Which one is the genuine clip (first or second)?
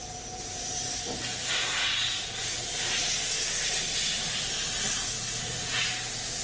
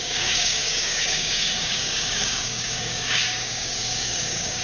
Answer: first